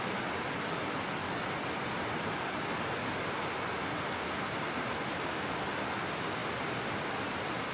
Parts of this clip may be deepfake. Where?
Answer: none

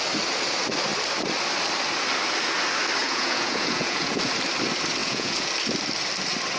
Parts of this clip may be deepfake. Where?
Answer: 3.0-4.2 (vocoder, Vocos); 5.0-5.5